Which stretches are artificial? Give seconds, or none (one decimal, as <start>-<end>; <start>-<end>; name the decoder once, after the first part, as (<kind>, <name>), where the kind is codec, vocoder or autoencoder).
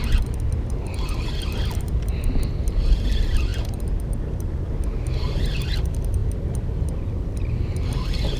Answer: none